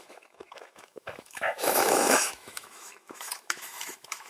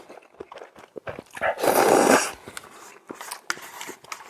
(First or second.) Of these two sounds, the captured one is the second